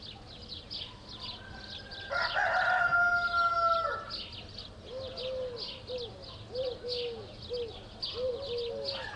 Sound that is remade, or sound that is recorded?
recorded